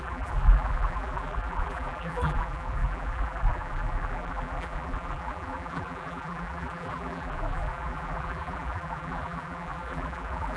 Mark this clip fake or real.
fake